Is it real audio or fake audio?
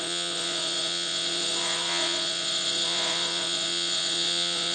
fake